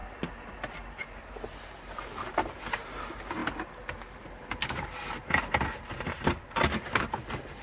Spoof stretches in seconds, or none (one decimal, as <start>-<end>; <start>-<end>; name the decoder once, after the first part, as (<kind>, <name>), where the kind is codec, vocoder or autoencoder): 1.2-7.6 (vocoder, BigVGAN v2)